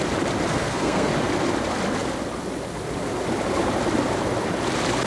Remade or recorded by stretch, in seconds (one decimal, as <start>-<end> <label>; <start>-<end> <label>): 0.0-0.5 recorded; 0.5-1.1 remade; 1.1-5.1 recorded